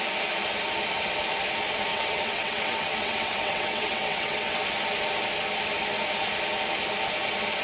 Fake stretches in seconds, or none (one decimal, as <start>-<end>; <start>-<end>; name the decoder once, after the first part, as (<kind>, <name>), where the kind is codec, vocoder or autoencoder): 1.9-4.6 (vocoder, WaveNeXt)